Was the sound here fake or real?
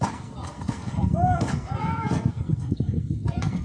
fake